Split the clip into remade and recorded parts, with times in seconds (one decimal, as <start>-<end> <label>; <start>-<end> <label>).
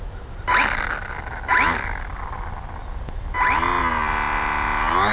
0.0-5.1 recorded